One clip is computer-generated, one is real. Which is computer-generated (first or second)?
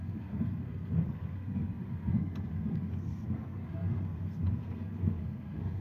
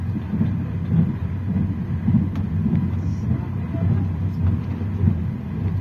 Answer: first